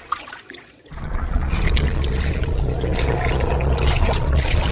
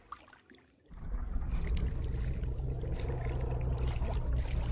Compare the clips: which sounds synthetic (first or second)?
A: first